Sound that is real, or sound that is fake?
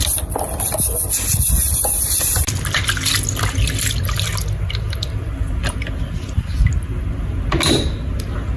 real